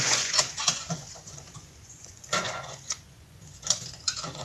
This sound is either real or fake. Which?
fake